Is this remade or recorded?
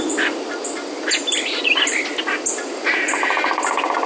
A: recorded